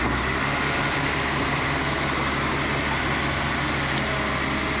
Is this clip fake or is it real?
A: real